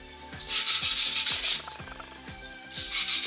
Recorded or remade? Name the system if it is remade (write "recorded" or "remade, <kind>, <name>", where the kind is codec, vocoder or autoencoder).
recorded